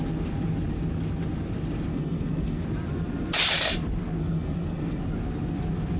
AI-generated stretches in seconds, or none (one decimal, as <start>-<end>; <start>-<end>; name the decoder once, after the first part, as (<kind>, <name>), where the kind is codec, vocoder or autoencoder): 1.9-2.6 (codec, SNAC); 4.2-5.0

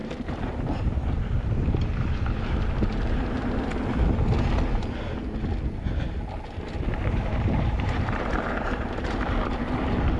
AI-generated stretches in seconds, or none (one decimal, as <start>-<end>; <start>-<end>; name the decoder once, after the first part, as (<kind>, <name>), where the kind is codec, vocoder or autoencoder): 0.0-3.7 (vocoder, BigVGAN v2); 6.9-10.2